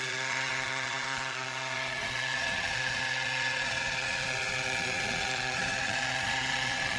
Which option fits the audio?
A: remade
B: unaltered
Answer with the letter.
A